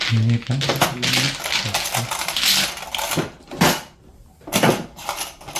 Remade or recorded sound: recorded